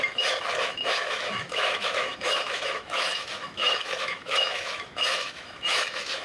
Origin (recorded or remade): remade